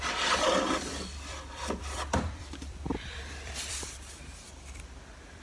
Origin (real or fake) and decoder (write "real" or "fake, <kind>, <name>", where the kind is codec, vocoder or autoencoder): fake, vocoder, BigVGAN v2